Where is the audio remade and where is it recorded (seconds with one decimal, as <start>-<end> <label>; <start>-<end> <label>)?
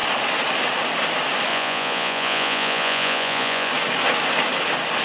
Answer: 0.0-1.5 recorded; 1.5-3.7 remade; 3.7-5.0 recorded